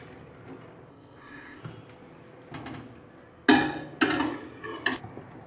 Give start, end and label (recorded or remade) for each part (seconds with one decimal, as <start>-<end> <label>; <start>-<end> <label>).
0.0-0.9 recorded; 0.9-1.6 remade; 1.6-5.5 recorded